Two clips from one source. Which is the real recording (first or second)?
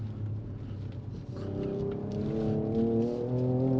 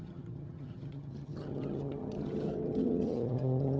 first